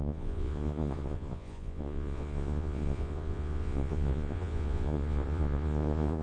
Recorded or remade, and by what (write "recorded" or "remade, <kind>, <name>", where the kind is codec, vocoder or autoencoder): remade, vocoder, Vocos